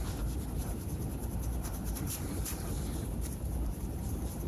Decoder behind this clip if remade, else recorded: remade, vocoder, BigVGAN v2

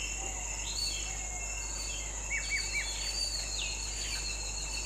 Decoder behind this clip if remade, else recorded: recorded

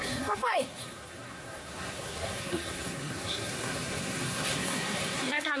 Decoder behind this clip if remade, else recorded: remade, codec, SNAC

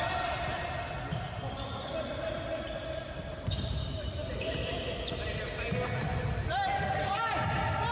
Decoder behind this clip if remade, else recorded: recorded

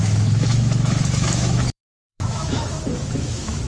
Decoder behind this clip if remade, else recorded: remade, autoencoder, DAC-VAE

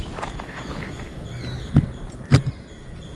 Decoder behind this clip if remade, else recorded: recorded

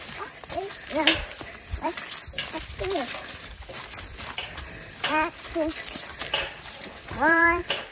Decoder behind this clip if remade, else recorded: remade, vocoder, BigVGAN v2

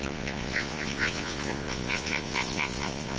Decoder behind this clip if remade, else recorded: remade, vocoder, Vocos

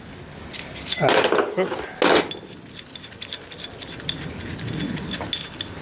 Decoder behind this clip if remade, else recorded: recorded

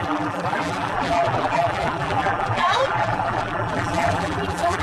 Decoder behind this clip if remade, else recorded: remade, vocoder, BigVGAN v2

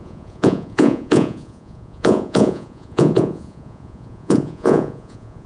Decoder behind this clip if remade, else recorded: remade, vocoder, Vocos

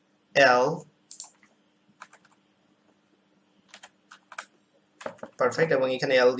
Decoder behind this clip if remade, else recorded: recorded